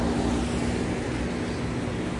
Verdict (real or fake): real